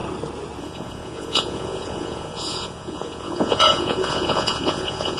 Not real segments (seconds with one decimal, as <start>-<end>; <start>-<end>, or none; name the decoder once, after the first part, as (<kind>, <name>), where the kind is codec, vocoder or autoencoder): 0.6-5.2 (vocoder, Vocos)